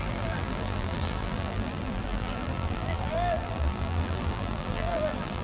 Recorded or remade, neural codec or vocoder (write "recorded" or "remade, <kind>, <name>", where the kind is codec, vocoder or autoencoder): remade, vocoder, BigVGAN v2